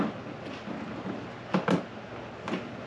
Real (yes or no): yes